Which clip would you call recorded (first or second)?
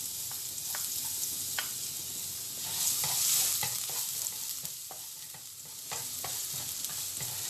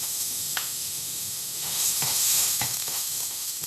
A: first